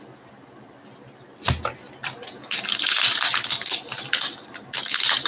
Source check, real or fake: real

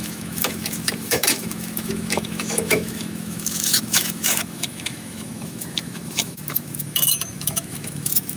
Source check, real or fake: fake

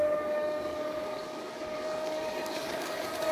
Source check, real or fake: fake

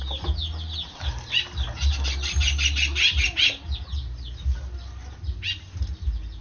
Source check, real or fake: real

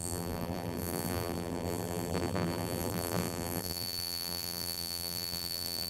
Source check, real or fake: fake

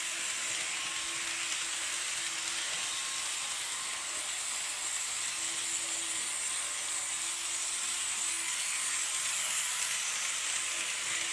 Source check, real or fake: real